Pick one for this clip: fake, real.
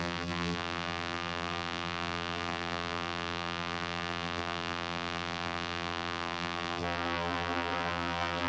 fake